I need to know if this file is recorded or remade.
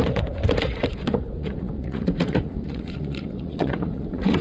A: remade